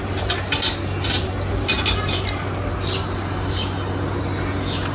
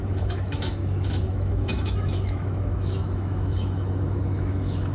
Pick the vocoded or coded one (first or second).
second